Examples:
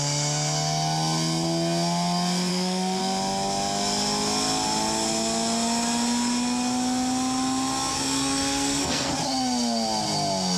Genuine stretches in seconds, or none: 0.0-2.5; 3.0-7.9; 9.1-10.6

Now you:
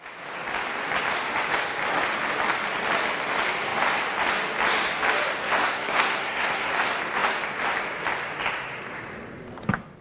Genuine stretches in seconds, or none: 0.0-5.4; 6.7-10.0

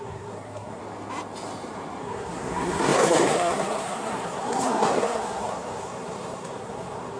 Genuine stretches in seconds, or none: 0.8-2.0

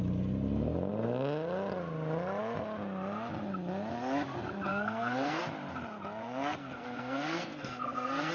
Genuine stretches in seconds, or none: 0.0-4.7; 5.4-6.2

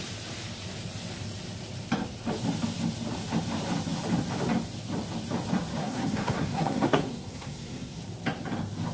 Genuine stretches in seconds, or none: 0.0-5.8; 8.0-8.9

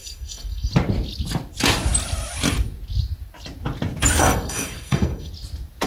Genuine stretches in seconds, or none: 0.7-4.2; 5.3-5.9